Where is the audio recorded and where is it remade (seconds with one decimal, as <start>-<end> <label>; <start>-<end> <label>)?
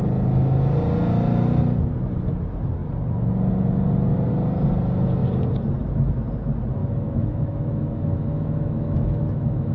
0.0-6.8 recorded; 6.8-9.7 remade